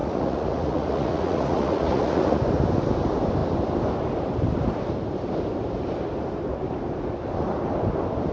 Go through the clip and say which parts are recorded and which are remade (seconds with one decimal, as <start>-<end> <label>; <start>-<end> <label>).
0.0-2.4 remade; 2.4-8.3 recorded